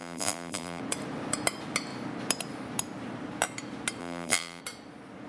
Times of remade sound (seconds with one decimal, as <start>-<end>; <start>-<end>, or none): 0.0-0.8; 4.0-4.6